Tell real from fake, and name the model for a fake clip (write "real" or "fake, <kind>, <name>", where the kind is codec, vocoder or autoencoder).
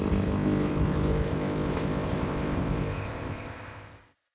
fake, codec, ZipCodec